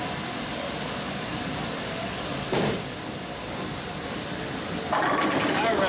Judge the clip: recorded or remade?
remade